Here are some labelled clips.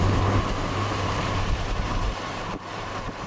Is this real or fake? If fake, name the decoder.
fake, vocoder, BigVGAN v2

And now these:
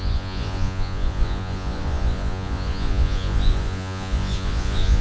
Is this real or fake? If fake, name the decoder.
fake, vocoder, Vocos